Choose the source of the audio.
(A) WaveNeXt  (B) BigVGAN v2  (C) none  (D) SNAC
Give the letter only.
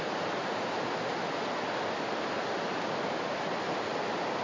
C